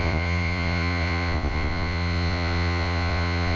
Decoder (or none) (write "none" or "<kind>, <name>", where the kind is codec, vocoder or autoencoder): vocoder, Vocos